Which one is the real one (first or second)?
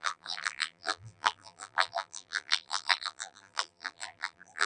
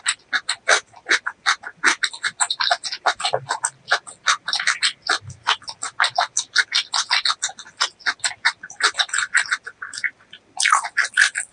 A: second